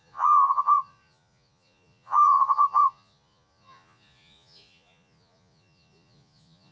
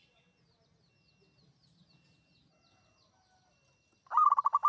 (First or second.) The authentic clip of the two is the second